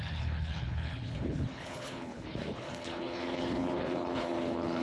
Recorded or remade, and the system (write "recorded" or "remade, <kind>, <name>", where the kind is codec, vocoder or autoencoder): remade, codec, HILCodec